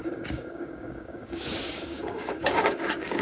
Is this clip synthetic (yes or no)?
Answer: yes